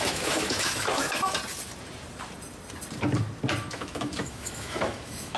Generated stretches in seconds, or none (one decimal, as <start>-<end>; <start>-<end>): 0.0-1.4; 3.7-5.4